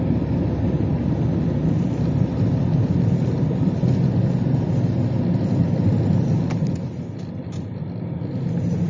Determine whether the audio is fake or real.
real